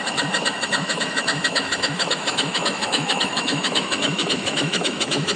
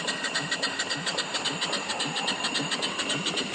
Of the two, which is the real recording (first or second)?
second